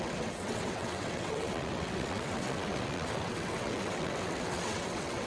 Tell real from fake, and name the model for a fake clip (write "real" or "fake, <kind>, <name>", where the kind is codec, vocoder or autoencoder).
fake, vocoder, WaveNeXt